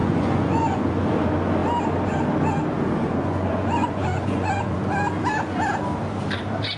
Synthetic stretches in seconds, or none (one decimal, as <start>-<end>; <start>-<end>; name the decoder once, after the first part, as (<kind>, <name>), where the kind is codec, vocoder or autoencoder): 0.0-0.8 (vocoder, Vocos); 3.0-4.8